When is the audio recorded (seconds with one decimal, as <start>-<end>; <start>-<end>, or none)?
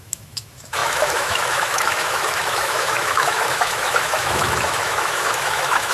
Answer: none